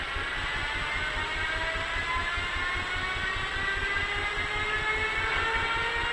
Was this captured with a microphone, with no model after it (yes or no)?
yes